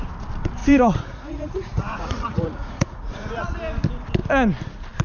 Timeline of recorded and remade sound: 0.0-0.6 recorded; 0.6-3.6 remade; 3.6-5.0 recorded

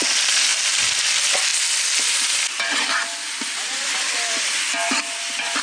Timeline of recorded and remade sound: 0.0-5.6 recorded

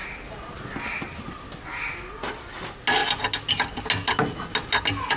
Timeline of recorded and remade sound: 0.0-5.2 recorded

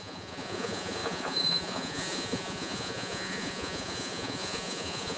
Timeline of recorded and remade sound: 0.0-5.2 remade

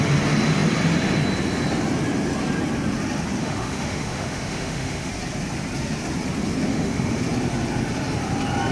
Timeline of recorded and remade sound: 0.0-3.4 recorded; 3.4-5.1 remade; 5.1-6.7 recorded; 6.7-7.2 remade; 7.2-8.7 recorded